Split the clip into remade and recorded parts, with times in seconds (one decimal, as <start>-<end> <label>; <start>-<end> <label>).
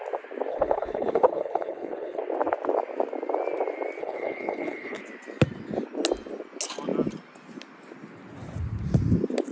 0.0-0.5 recorded; 0.5-2.2 remade; 2.2-4.0 recorded; 4.0-5.0 remade; 5.0-9.5 recorded